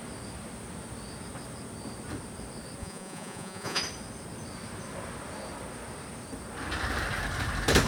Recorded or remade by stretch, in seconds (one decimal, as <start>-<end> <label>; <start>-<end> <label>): 0.0-2.8 recorded; 2.8-3.8 remade; 3.8-7.9 recorded